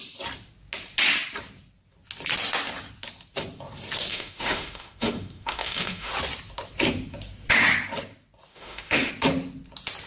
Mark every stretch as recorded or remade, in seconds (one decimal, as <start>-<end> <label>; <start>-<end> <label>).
0.0-4.1 recorded; 4.1-6.1 remade; 6.1-8.5 recorded; 8.5-9.1 remade; 9.1-10.1 recorded